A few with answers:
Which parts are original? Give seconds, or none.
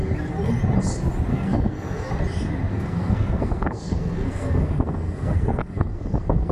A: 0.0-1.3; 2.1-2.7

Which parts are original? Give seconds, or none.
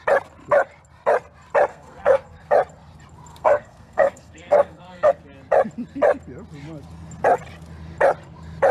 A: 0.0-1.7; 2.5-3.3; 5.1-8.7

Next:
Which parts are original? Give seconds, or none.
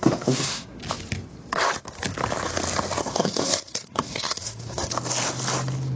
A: 0.8-2.9; 4.9-6.0